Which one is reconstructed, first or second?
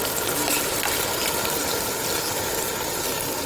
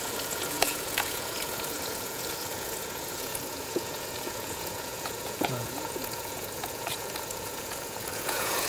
second